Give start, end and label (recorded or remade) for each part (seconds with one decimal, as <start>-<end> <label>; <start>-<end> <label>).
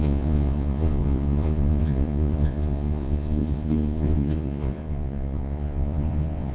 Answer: 0.0-6.5 remade